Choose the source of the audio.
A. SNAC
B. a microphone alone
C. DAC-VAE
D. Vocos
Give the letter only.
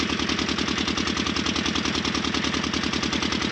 B